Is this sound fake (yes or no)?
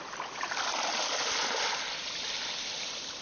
no